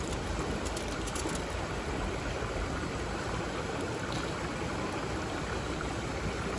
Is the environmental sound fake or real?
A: real